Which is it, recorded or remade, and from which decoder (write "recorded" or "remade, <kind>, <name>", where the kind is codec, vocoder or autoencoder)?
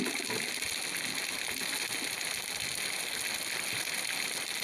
recorded